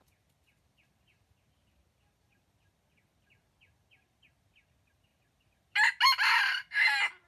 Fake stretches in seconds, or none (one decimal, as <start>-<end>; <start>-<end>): none